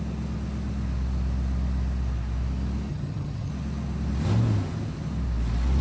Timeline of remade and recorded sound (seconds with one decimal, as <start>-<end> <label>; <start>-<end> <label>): 0.0-2.9 recorded; 2.9-3.5 remade; 3.5-5.8 recorded